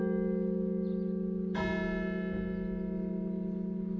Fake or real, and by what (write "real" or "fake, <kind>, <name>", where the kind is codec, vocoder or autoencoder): real